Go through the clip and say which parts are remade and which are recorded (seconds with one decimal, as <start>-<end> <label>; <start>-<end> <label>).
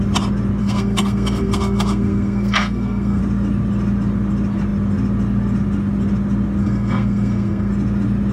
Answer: 0.0-0.6 recorded; 0.6-3.2 remade; 3.2-6.6 recorded; 6.6-7.7 remade; 7.7-8.3 recorded